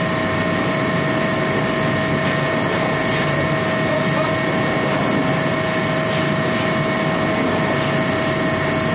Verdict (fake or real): real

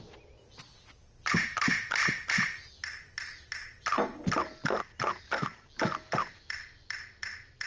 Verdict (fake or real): real